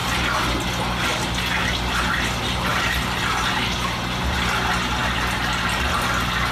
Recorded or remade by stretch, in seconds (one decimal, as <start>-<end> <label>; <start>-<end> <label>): 0.0-6.5 recorded